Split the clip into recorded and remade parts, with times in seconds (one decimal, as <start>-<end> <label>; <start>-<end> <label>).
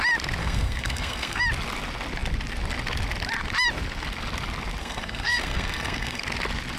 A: 0.0-0.4 recorded; 0.4-1.4 remade; 1.4-4.8 recorded; 4.8-6.2 remade; 6.2-6.8 recorded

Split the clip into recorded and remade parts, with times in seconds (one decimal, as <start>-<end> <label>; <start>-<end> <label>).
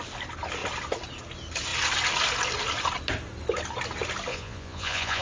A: 0.0-4.3 recorded; 4.3-5.2 remade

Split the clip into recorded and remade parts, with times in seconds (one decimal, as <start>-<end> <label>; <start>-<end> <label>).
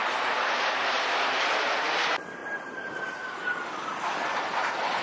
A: 0.0-0.7 remade; 0.7-2.4 recorded; 2.4-3.9 remade; 3.9-5.0 recorded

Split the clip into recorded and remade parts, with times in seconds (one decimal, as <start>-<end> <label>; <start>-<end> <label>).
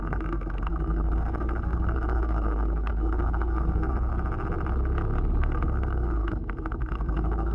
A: 0.0-4.1 remade; 4.1-5.4 recorded; 5.4-7.5 remade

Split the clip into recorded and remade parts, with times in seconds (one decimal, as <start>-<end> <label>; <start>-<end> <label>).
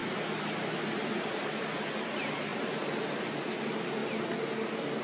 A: 0.0-5.0 recorded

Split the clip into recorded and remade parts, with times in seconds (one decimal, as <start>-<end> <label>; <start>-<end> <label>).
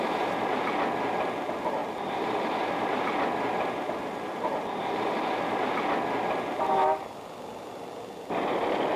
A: 0.0-1.8 recorded; 1.8-5.3 remade; 5.3-9.0 recorded